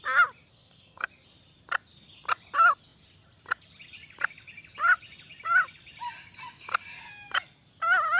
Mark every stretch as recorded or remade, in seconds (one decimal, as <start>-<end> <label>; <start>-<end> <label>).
0.0-0.5 recorded; 0.5-1.1 remade; 1.1-8.2 recorded